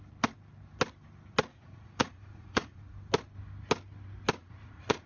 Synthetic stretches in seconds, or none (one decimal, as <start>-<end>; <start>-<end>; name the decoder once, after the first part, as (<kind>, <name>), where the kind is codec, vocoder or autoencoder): 1.5-2.8 (vocoder, Vocos); 4.4-5.1